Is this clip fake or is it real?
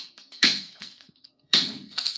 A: fake